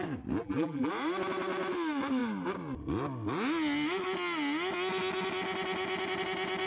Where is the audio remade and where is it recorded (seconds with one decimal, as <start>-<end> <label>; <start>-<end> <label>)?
0.0-0.4 recorded; 0.4-0.9 remade; 0.9-6.7 recorded